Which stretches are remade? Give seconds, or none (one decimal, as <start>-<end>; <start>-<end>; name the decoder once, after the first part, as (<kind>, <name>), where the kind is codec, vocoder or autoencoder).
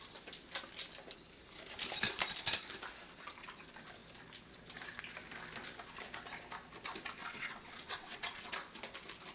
7.2-8.5 (vocoder, WaveNeXt)